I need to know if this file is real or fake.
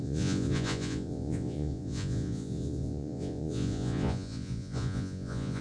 fake